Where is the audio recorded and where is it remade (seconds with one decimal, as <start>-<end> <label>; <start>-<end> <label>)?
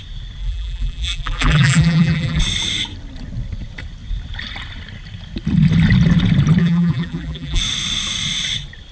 0.0-0.4 recorded; 0.4-2.4 remade; 2.4-6.6 recorded; 6.6-7.6 remade; 7.6-8.9 recorded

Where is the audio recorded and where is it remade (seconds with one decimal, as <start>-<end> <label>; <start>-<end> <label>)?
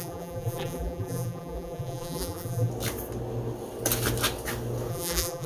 0.0-2.7 remade; 2.7-4.9 recorded; 4.9-5.5 remade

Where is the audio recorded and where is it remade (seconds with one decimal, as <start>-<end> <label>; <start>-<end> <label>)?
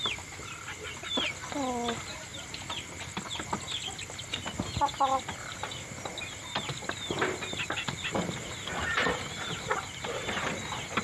0.0-11.0 recorded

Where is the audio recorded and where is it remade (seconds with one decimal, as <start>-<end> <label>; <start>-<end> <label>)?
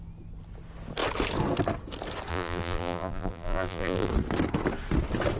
0.0-2.3 recorded; 2.3-4.1 remade; 4.1-5.4 recorded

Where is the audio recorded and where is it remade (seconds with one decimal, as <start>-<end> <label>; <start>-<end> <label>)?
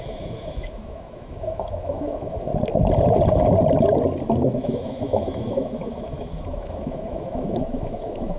0.0-2.5 remade; 2.5-4.5 recorded; 4.5-8.4 remade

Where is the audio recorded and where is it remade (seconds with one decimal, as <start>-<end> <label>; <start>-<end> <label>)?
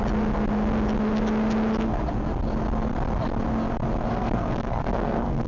0.0-4.1 recorded; 4.1-5.5 remade